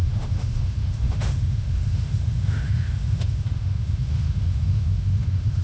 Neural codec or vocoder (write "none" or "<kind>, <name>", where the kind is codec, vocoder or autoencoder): autoencoder, DAC-VAE